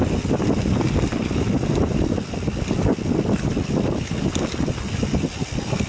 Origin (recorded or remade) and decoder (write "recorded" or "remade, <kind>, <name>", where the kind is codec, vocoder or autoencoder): recorded